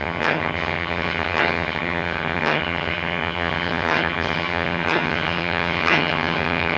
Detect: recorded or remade remade